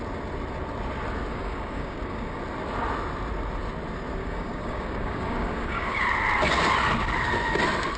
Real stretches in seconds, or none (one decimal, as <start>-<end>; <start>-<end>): 0.0-1.3; 2.4-4.2; 6.0-8.0